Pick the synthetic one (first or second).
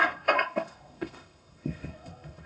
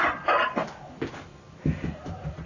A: first